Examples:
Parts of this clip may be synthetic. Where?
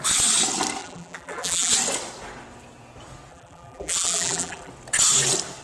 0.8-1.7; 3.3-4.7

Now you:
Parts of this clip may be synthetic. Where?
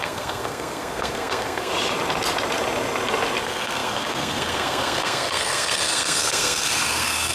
0.0-1.7; 3.4-7.3